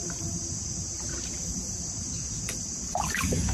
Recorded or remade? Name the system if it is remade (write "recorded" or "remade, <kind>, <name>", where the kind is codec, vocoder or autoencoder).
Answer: remade, vocoder, BigVGAN v2